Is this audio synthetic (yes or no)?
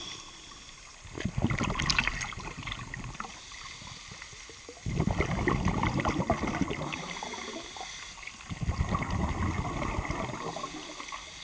no